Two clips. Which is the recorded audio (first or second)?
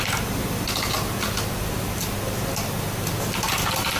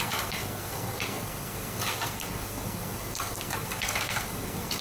first